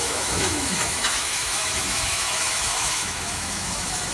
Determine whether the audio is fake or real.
fake